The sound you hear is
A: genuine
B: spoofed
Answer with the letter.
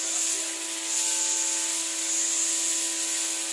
A